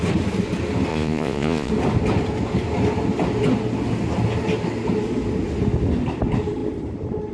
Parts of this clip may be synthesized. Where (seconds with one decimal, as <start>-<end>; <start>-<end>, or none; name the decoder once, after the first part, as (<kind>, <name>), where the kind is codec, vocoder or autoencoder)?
0.9-1.7 (vocoder, Vocos)